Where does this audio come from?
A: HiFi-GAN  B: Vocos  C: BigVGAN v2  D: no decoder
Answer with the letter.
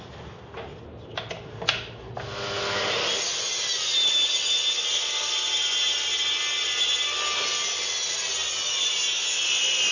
D